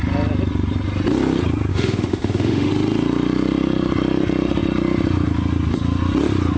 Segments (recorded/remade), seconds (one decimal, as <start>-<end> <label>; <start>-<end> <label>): 0.0-1.7 recorded; 1.7-2.7 remade; 2.7-6.6 recorded